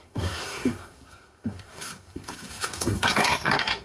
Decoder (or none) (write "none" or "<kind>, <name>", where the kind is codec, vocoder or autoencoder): codec, SNAC